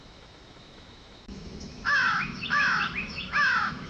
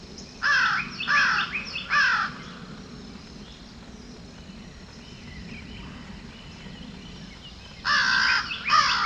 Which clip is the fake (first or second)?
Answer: first